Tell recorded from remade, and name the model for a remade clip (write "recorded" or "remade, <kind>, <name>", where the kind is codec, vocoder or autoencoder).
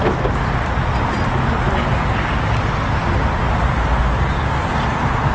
recorded